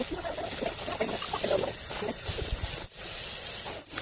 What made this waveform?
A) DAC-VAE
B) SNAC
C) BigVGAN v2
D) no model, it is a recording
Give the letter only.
D